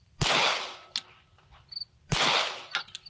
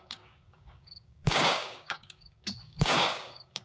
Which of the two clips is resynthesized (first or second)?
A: second